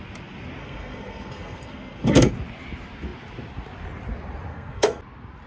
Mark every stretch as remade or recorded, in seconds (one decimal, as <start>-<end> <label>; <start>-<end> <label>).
0.0-0.6 recorded; 0.6-2.3 remade; 2.3-4.5 recorded; 4.5-5.0 remade; 5.0-5.5 recorded